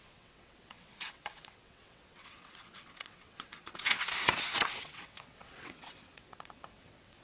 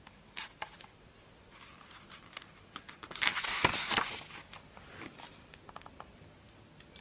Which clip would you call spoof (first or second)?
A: first